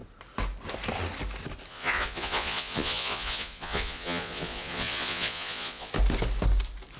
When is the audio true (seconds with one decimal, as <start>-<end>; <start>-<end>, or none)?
0.0-1.7; 5.9-7.0